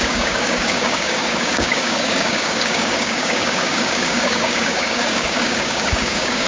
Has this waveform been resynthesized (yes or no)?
yes